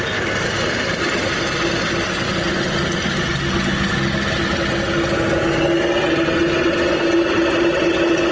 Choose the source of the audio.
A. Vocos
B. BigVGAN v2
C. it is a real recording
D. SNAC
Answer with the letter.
C